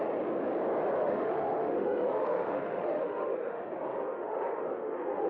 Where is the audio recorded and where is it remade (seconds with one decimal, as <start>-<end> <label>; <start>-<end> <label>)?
0.0-1.0 recorded; 1.0-3.6 remade; 3.6-4.0 recorded; 4.0-5.3 remade